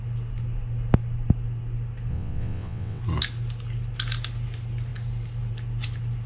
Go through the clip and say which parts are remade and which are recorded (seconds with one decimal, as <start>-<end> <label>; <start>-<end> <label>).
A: 0.0-2.1 recorded; 2.1-3.0 remade; 3.0-6.3 recorded